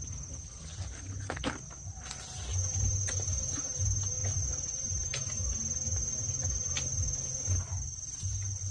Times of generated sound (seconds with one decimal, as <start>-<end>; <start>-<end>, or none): none